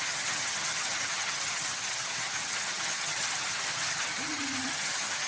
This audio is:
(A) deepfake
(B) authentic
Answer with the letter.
A